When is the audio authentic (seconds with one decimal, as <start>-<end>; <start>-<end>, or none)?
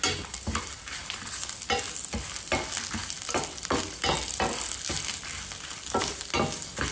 0.0-6.9